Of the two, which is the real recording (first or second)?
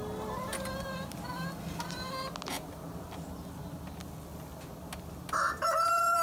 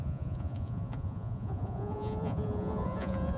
first